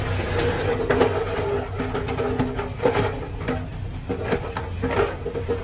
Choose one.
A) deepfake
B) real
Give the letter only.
B